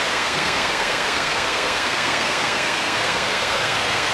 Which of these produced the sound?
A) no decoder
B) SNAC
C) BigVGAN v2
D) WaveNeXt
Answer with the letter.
B